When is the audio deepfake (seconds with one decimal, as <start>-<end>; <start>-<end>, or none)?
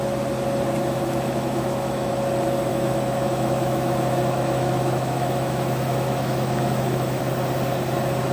0.8-2.1; 2.7-7.2